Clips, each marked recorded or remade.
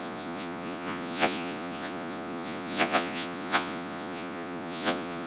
remade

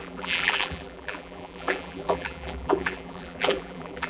remade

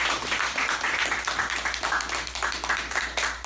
remade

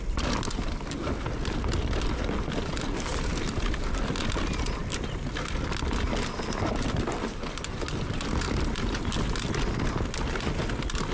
recorded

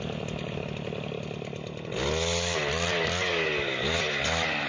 recorded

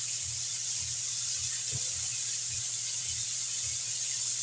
recorded